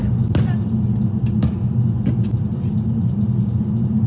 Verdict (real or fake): real